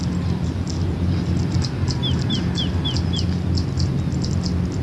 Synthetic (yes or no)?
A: no